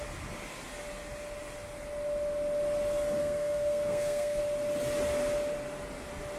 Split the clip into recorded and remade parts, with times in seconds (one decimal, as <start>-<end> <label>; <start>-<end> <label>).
0.0-3.2 recorded; 3.2-4.4 remade; 4.4-6.4 recorded